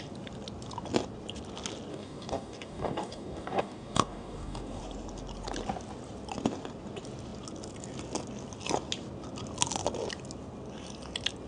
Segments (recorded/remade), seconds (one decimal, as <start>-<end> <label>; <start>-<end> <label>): 0.0-1.9 recorded; 1.9-4.8 remade; 4.8-11.5 recorded